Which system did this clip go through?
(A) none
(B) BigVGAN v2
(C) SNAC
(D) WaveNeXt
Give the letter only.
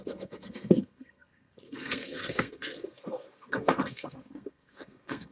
C